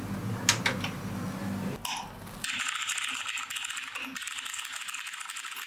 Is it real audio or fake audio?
real